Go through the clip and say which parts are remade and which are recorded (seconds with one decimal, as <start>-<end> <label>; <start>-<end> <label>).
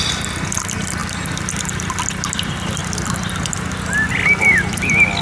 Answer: 0.0-5.2 recorded